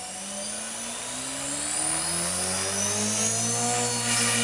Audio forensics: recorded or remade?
recorded